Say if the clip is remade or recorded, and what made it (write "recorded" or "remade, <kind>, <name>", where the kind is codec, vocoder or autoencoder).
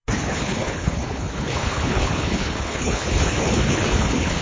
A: remade, codec, HILCodec